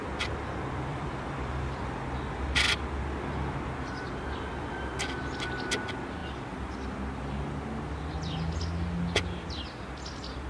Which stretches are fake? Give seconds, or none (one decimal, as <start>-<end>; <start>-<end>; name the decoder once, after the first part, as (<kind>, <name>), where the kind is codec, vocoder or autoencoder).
0.9-1.7 (vocoder, BigVGAN v2)